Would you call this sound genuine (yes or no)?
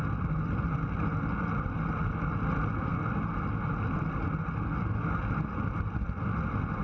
yes